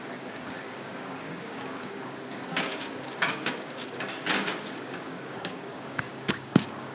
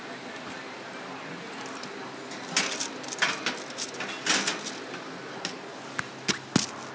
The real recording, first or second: second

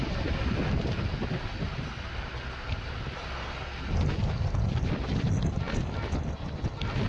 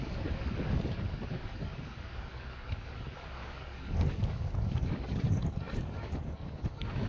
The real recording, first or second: first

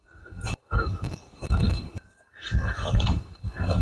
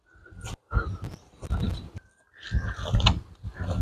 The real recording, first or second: second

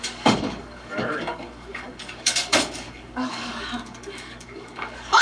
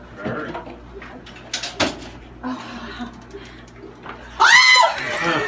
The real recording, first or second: second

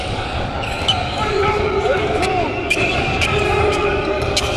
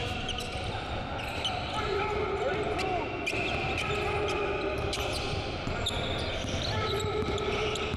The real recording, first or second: second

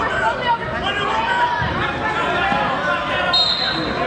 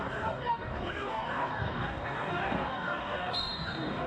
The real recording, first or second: first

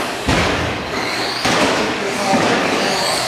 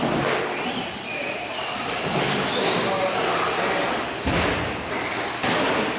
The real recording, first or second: second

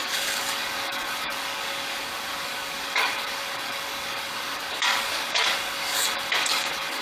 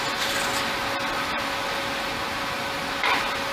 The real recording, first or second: second